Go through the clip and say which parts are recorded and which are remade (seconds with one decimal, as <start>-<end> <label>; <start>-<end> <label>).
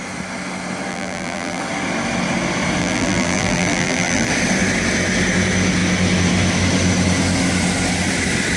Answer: 0.0-0.9 recorded; 0.9-1.6 remade; 1.6-2.8 recorded; 2.8-4.3 remade; 4.3-8.6 recorded